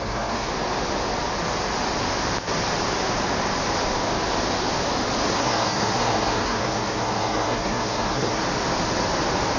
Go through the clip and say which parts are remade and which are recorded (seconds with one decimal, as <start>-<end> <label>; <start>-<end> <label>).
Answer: 0.0-0.5 remade; 0.5-5.3 recorded; 5.3-8.4 remade; 8.4-9.6 recorded